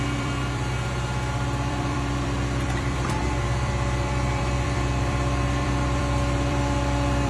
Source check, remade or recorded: remade